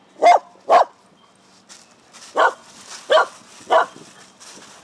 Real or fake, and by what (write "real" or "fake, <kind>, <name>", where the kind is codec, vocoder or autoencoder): real